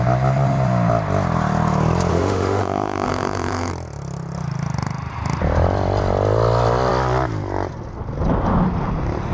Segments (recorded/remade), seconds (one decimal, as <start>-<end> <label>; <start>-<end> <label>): 0.0-2.1 recorded; 2.1-3.7 remade; 3.7-9.3 recorded

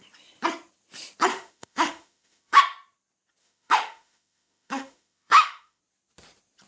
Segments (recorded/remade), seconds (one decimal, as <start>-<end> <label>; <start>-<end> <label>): 0.0-1.3 recorded; 1.3-2.6 remade; 2.6-3.4 recorded; 3.4-5.8 remade; 5.8-6.7 recorded

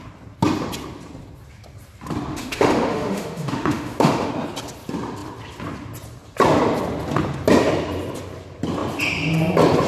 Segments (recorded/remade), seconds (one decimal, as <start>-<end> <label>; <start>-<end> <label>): 0.0-2.3 recorded; 2.3-4.3 remade; 4.3-9.9 recorded

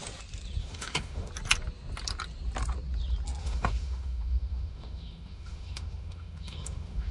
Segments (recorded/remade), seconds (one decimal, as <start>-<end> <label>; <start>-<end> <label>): 0.0-0.6 recorded; 0.6-1.3 remade; 1.3-3.4 recorded; 3.4-7.1 remade

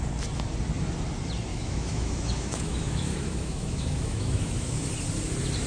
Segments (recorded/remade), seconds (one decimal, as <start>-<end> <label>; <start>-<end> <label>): 0.0-1.5 recorded; 1.5-4.9 remade; 4.9-5.7 recorded